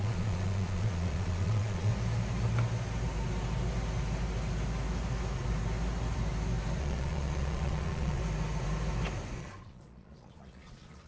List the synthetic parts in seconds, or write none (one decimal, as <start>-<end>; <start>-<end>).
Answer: 0.0-1.9; 6.8-8.2; 9.4-11.1